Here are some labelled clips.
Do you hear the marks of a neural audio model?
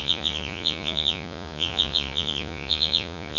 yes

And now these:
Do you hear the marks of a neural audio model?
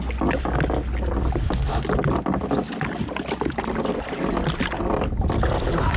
no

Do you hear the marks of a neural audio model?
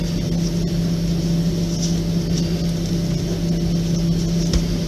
no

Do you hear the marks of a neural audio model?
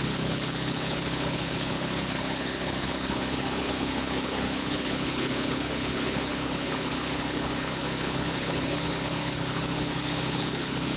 yes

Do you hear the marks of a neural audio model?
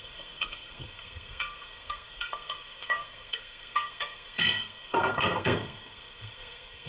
yes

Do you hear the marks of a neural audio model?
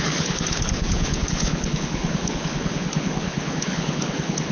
yes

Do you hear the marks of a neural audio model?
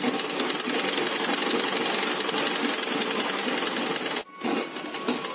no